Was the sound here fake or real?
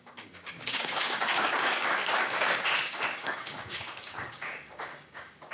fake